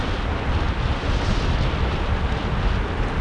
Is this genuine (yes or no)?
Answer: yes